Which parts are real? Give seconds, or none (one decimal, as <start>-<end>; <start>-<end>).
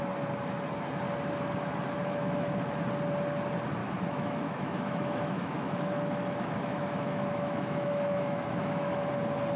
0.0-2.0; 2.8-3.8; 9.1-9.6